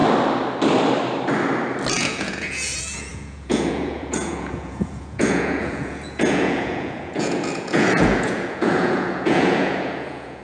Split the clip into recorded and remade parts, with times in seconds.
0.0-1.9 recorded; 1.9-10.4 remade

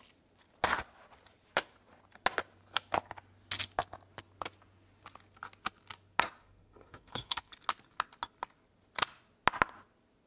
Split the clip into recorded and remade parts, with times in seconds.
0.0-6.4 recorded; 6.4-7.5 remade; 7.5-10.3 recorded

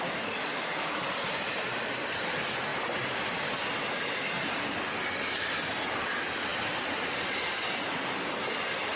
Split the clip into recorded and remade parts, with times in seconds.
0.0-2.7 remade; 2.7-3.5 recorded; 3.5-6.5 remade; 6.5-7.1 recorded; 7.1-9.0 remade